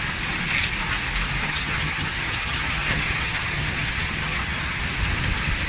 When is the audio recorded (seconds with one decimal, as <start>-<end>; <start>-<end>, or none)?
0.0-1.4; 4.8-5.7